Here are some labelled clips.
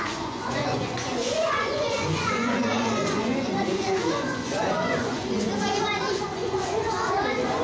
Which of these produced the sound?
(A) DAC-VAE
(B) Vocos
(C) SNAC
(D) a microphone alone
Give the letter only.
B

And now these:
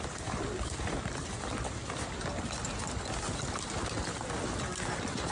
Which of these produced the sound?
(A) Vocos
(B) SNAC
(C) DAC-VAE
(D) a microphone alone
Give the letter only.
D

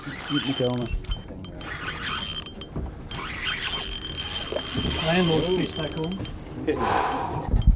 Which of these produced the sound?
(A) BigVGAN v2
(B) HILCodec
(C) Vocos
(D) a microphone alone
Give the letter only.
D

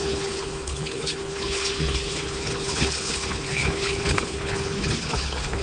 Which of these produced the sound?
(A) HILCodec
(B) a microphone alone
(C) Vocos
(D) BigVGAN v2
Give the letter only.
A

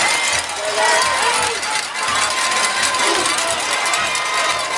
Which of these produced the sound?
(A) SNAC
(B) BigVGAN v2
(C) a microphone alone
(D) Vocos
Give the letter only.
C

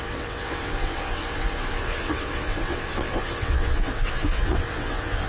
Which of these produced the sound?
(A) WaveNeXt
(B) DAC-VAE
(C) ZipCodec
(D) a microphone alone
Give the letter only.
A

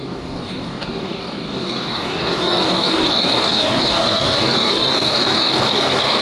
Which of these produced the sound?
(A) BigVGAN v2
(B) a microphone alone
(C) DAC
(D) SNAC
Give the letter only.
C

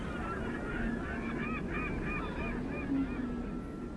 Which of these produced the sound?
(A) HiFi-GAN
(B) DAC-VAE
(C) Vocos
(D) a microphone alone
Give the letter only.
D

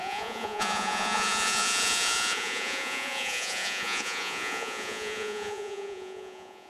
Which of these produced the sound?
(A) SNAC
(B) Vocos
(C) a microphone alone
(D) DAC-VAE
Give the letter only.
B